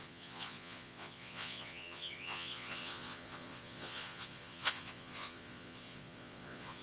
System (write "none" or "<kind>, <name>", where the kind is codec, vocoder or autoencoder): vocoder, Vocos